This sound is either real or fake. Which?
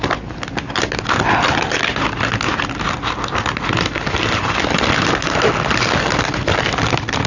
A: real